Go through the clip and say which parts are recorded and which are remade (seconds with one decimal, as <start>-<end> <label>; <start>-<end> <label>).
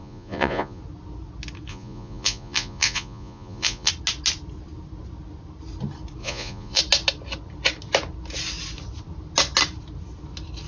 0.0-0.8 remade; 0.8-1.7 recorded; 1.7-3.9 remade; 3.9-6.2 recorded; 6.2-6.8 remade; 6.8-10.7 recorded